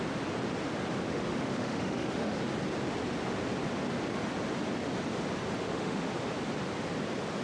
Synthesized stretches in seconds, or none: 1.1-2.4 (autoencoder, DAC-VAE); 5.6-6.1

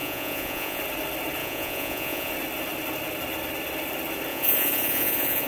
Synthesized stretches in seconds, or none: 0.0-0.8 (vocoder, Vocos); 1.4-2.3; 4.3-5.5

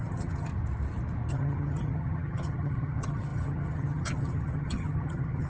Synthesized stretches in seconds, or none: 0.0-0.5 (vocoder, HiFi-GAN); 1.3-5.5

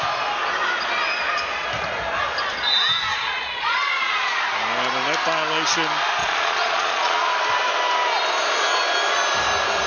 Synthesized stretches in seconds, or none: 3.1-4.4 (vocoder, Vocos); 6.2-7.3

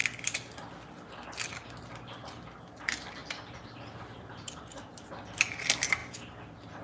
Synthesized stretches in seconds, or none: 3.2-5.1 (vocoder, BigVGAN v2)